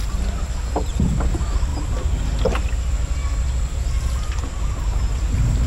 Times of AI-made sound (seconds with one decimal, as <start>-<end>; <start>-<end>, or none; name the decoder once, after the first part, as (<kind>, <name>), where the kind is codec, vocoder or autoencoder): none